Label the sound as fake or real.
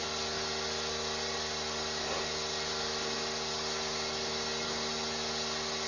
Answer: real